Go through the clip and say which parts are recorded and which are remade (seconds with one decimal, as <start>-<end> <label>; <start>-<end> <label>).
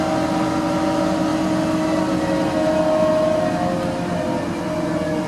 0.0-5.3 recorded